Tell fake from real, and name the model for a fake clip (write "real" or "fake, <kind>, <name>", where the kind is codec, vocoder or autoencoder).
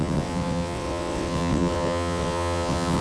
fake, vocoder, WaveNeXt